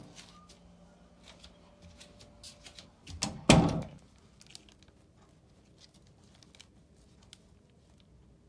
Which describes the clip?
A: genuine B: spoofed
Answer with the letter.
A